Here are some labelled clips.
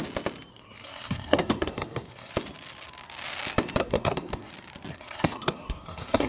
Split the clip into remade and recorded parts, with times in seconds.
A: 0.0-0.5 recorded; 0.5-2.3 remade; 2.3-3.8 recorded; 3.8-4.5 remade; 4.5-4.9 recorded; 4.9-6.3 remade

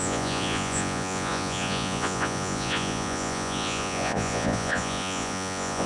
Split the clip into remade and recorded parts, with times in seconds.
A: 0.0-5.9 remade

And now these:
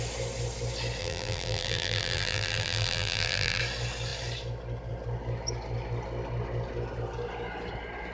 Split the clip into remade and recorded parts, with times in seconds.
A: 0.0-1.0 recorded; 1.0-3.6 remade; 3.6-8.1 recorded

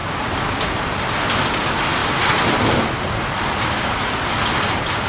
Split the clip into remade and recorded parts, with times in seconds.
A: 0.0-5.1 recorded

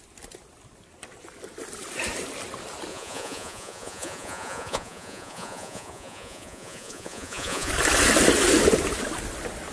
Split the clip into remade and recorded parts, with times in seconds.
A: 0.0-2.9 recorded; 2.9-7.7 remade; 7.7-9.7 recorded

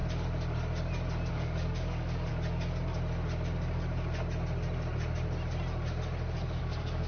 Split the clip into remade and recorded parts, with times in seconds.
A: 0.0-1.3 recorded; 1.3-2.3 remade; 2.3-6.6 recorded; 6.6-7.1 remade

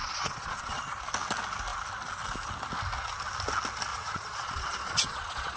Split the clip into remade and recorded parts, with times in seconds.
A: 0.0-0.8 remade; 0.8-3.9 recorded; 3.9-5.6 remade

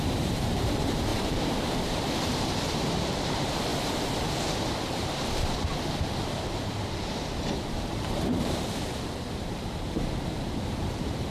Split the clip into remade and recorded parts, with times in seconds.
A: 0.0-3.7 remade; 3.7-4.7 recorded; 4.7-5.7 remade; 5.7-7.5 recorded; 7.5-11.3 remade